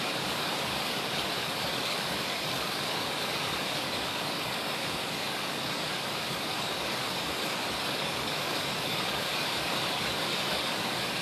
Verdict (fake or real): fake